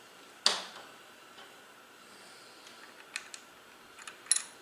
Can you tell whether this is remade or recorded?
recorded